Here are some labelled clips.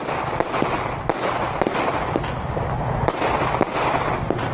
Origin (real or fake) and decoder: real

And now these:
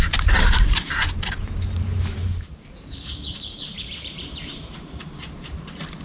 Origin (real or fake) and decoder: fake, vocoder, BigVGAN v2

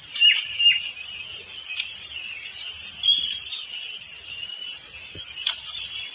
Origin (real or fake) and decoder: real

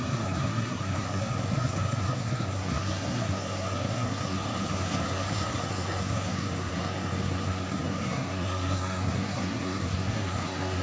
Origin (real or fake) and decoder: fake, codec, SNAC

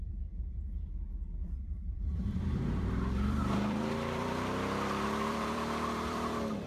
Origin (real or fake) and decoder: fake, vocoder, BigVGAN v2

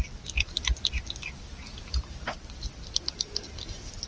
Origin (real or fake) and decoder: real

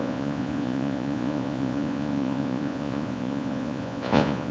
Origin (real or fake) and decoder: fake, vocoder, Vocos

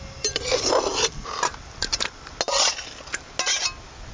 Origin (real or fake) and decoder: real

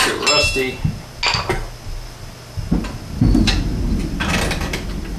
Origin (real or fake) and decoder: real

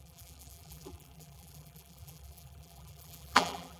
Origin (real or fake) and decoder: fake, vocoder, BigVGAN v2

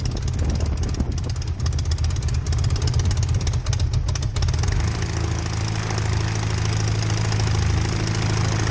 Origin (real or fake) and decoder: real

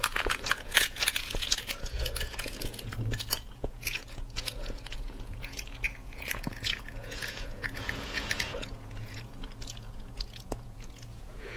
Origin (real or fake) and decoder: fake, vocoder, Vocos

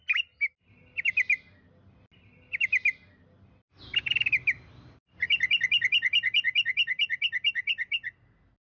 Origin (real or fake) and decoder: real